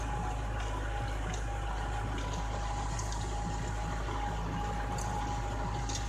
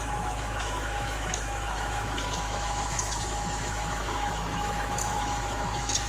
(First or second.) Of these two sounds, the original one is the first